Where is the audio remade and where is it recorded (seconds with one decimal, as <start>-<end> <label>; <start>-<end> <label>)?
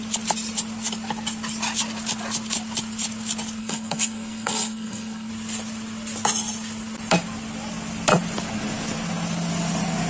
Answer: 0.0-3.6 recorded; 3.6-5.3 remade; 5.3-10.1 recorded